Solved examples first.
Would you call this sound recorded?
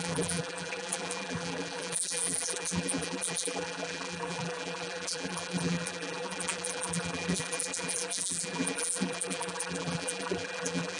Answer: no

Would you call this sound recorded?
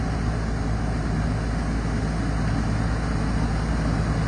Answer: yes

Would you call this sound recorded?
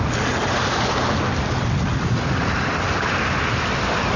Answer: yes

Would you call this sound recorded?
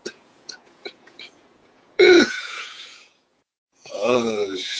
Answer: no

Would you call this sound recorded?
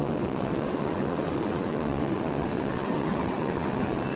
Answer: no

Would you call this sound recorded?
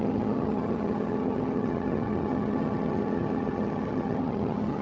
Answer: no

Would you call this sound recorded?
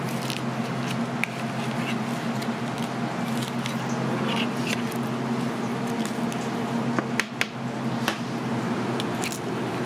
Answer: yes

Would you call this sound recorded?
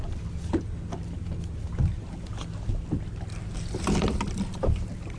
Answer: yes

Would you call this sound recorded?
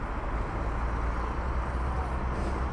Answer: yes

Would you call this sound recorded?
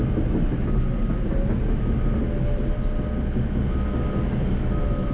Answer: yes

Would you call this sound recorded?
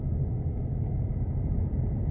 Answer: no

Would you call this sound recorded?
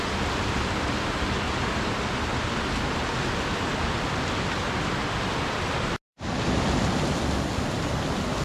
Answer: yes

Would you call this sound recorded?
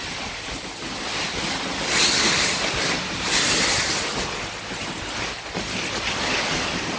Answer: yes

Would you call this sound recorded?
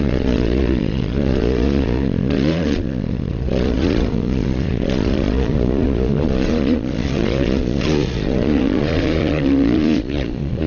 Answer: no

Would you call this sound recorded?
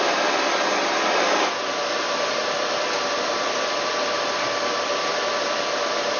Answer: yes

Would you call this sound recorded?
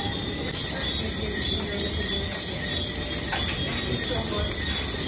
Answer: yes